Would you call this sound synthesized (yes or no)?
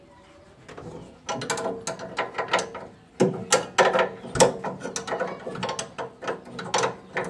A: no